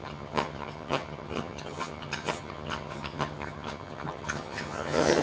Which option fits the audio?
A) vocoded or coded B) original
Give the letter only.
A